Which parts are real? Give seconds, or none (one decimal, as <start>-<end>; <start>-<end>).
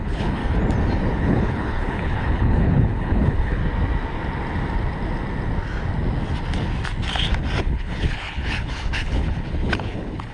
0.4-1.2; 3.6-7.6